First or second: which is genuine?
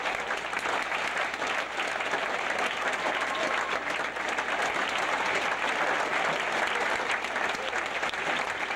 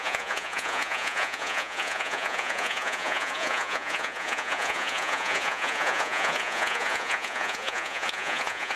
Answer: first